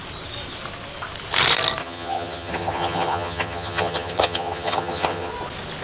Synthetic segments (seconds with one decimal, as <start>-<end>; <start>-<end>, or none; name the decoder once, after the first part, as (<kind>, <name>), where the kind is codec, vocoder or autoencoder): 1.8-5.3 (vocoder, HiFi-GAN)